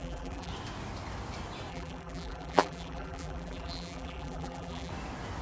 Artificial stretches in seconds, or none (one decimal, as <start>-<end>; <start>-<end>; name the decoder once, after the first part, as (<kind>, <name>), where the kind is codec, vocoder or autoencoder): 0.0-0.5 (vocoder, BigVGAN v2); 1.7-4.9